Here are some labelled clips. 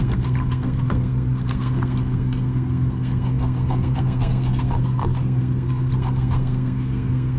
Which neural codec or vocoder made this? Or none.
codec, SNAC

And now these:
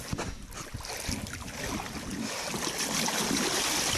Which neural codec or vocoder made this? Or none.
none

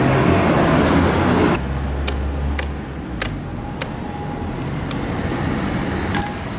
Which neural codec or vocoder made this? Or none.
none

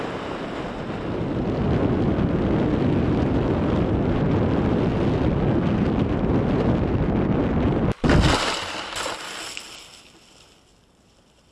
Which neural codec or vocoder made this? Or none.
none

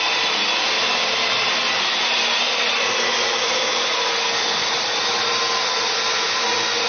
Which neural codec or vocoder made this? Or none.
none